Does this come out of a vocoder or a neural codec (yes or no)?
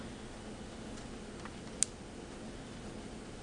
no